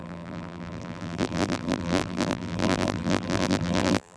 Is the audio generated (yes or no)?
yes